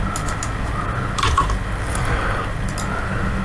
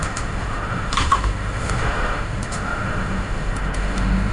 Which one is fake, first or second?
second